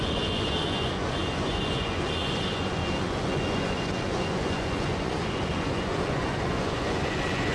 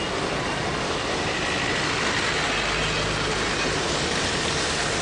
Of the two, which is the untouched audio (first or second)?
second